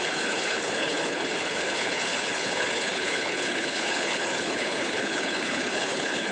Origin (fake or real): fake